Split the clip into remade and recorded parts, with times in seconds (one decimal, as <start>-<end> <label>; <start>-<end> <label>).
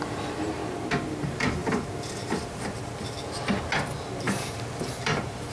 0.0-0.6 remade; 0.6-1.1 recorded; 1.1-1.6 remade; 1.6-4.9 recorded; 4.9-5.5 remade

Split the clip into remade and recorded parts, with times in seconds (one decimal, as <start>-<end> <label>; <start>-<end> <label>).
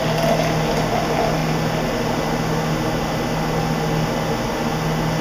0.0-5.2 recorded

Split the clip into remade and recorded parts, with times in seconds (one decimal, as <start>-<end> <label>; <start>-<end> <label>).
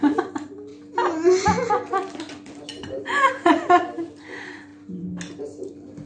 0.0-0.7 remade; 0.7-2.5 recorded; 2.5-4.7 remade; 4.7-5.4 recorded; 5.4-6.1 remade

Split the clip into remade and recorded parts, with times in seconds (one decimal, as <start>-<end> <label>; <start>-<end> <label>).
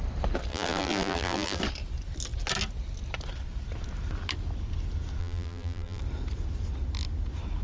0.0-0.5 recorded; 0.5-1.6 remade; 1.6-5.2 recorded; 5.2-6.0 remade; 6.0-7.6 recorded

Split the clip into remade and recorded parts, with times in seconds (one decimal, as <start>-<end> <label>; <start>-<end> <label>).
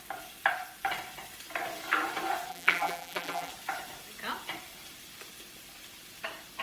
0.0-2.5 recorded; 2.5-3.5 remade; 3.5-6.6 recorded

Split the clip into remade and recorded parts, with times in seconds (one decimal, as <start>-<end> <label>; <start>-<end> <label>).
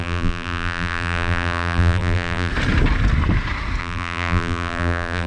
0.0-2.5 remade; 2.5-3.8 recorded; 3.8-5.3 remade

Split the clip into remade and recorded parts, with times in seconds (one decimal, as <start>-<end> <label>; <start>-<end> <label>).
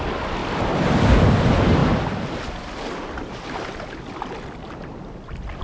0.0-0.4 recorded; 0.4-1.3 remade; 1.3-1.8 recorded; 1.8-3.9 remade; 3.9-5.6 recorded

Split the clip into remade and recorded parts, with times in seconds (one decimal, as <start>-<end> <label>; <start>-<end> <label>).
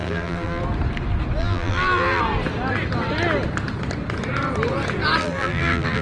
0.0-0.6 remade; 0.6-1.4 recorded; 1.4-2.2 remade; 2.2-5.2 recorded; 5.2-6.0 remade